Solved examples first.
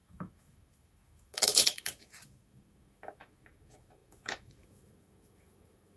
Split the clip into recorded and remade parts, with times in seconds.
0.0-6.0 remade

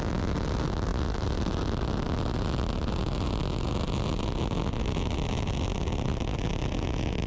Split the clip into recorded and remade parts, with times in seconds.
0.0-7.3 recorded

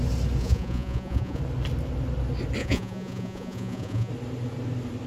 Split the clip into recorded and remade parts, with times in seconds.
0.0-0.4 recorded; 0.4-1.4 remade; 1.4-2.6 recorded; 2.6-4.1 remade; 4.1-5.1 recorded

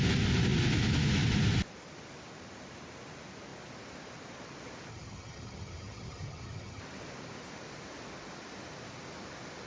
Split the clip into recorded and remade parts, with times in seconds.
0.0-4.9 recorded; 4.9-6.8 remade; 6.8-9.7 recorded

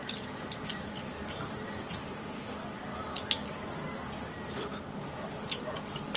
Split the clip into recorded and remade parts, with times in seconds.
0.0-4.7 recorded; 4.7-6.2 remade